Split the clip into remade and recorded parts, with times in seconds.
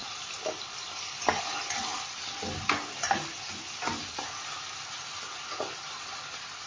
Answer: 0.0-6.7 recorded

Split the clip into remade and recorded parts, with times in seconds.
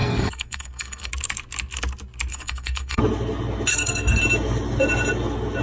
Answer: 0.0-1.1 remade; 1.1-2.3 recorded; 2.3-3.0 remade; 3.0-3.7 recorded; 3.7-4.2 remade; 4.2-5.6 recorded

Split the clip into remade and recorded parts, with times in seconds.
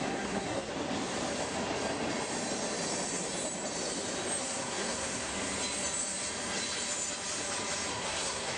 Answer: 0.0-0.7 remade; 0.7-4.4 recorded; 4.4-5.3 remade; 5.3-7.9 recorded; 7.9-8.6 remade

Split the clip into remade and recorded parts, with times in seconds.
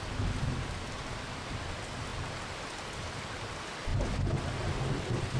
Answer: 0.0-5.4 recorded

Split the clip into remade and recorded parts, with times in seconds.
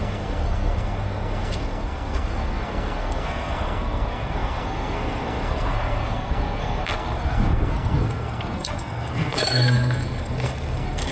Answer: 0.0-11.1 remade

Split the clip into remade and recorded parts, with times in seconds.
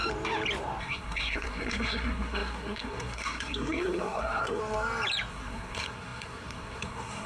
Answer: 0.0-0.8 recorded; 0.8-4.6 remade; 4.6-5.3 recorded; 5.3-7.3 remade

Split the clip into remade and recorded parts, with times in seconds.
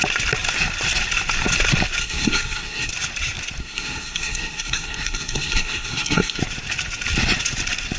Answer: 0.0-2.0 recorded; 2.0-2.9 remade; 2.9-3.6 recorded; 3.6-6.4 remade; 6.4-8.0 recorded